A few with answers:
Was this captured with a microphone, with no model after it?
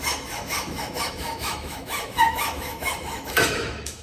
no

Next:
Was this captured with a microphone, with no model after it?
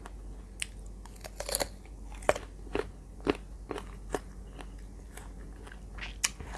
yes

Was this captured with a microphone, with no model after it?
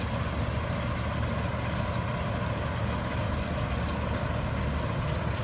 yes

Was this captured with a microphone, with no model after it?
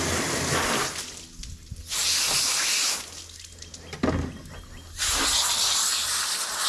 yes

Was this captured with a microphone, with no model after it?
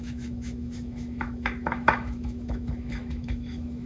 no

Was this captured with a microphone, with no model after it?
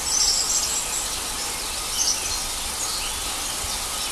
yes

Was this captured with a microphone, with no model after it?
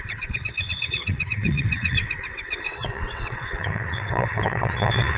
no